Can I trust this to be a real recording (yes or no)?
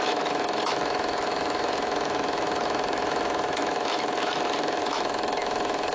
no